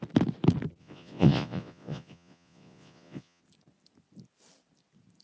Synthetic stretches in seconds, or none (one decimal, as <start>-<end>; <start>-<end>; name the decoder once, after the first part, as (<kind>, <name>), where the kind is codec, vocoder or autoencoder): 0.8-3.4 (vocoder, Vocos)